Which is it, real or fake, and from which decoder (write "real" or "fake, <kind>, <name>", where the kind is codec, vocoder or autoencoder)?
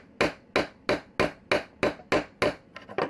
real